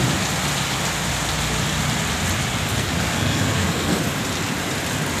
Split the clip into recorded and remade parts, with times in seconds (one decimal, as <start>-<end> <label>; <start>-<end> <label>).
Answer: 0.0-2.7 recorded; 2.7-4.0 remade; 4.0-5.2 recorded